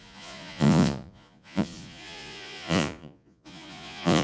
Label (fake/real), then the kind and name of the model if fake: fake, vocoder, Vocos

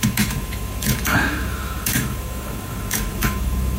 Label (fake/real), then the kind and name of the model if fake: fake, autoencoder, DAC-VAE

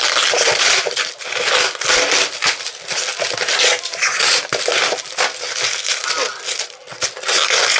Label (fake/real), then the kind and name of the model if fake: real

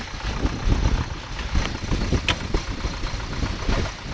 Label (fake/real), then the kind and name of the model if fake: real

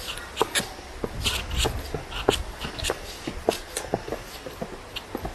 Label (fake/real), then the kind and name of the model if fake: real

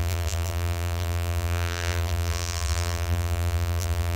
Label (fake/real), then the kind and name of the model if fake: fake, vocoder, BigVGAN v2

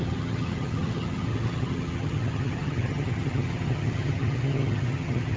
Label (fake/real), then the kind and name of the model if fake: fake, vocoder, HiFi-GAN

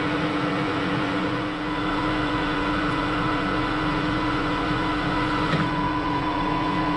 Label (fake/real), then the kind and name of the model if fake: fake, vocoder, Vocos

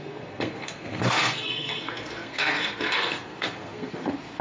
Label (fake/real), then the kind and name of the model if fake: fake, codec, SNAC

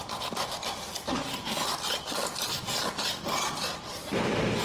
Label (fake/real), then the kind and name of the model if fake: fake, vocoder, BigVGAN v2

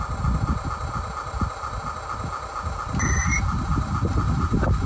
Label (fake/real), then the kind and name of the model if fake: real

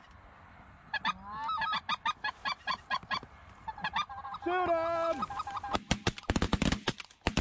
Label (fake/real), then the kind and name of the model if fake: real